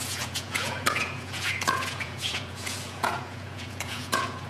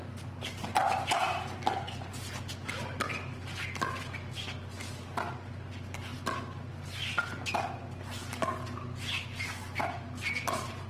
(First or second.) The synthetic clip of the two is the first